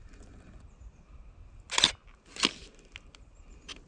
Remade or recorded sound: recorded